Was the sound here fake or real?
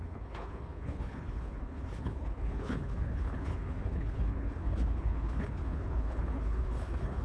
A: fake